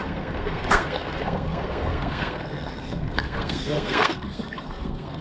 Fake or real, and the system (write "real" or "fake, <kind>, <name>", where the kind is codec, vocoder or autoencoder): fake, codec, SNAC